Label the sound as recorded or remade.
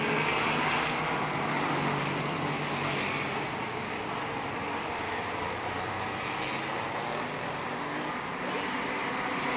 recorded